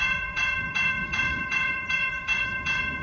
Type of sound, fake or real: fake